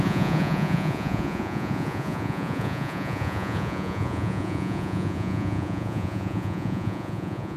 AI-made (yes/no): yes